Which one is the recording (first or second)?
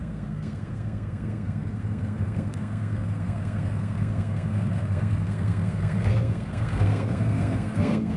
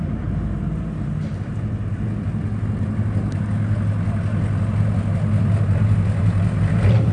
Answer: second